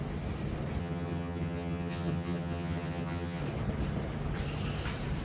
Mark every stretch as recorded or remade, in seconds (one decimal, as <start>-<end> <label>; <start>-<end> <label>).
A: 0.0-0.8 recorded; 0.8-3.4 remade; 3.4-5.2 recorded